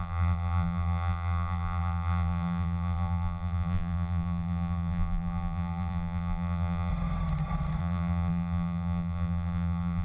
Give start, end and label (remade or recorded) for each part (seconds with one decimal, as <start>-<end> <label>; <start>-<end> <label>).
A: 0.0-6.9 remade; 6.9-7.8 recorded; 7.8-10.0 remade